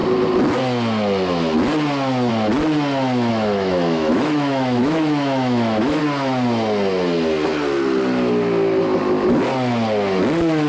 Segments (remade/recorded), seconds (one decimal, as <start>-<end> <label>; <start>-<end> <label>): 0.0-3.3 recorded; 3.3-6.0 remade; 6.0-10.7 recorded